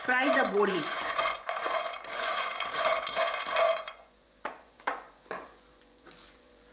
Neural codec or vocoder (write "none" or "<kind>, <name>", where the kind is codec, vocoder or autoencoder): vocoder, Vocos